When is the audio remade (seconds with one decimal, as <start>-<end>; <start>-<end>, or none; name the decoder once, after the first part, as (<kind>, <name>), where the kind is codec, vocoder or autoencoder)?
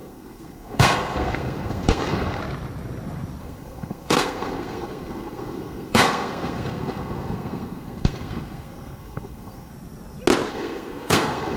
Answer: 0.0-2.4 (codec, SNAC); 3.4-9.7; 10.5-11.6